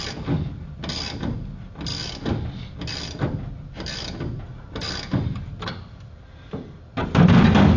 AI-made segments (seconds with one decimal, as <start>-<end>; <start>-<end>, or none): none